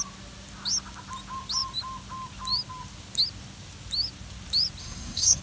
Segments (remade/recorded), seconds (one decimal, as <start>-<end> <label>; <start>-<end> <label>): 0.0-4.8 recorded; 4.8-5.4 remade